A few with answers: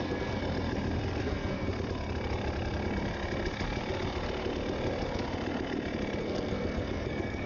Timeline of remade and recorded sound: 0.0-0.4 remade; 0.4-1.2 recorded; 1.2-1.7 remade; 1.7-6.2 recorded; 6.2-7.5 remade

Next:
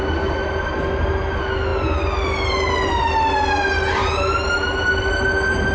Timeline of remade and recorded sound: 0.0-5.7 recorded

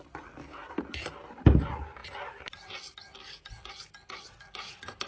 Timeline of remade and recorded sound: 0.0-5.1 recorded